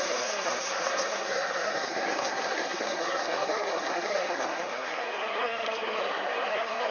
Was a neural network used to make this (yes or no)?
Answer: yes